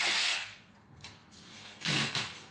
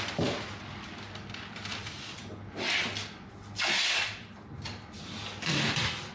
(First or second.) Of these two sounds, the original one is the second